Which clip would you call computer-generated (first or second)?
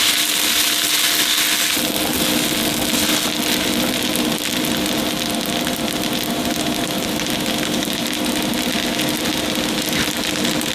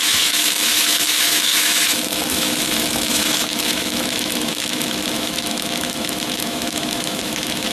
second